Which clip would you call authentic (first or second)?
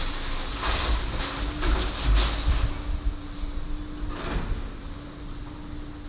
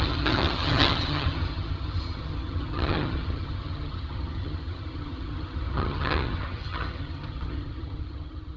first